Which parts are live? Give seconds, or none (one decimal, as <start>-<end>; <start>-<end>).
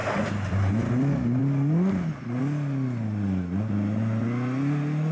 0.0-5.1